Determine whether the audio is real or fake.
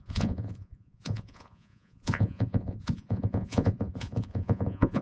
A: fake